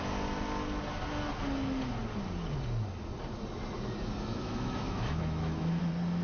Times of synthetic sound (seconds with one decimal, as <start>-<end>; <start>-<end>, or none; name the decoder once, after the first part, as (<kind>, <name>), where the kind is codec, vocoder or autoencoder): 4.3-5.8 (autoencoder, DAC-VAE)